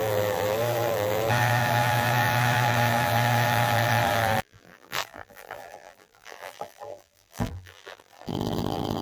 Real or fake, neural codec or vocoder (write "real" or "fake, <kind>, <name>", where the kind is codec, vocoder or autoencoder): fake, vocoder, BigVGAN v2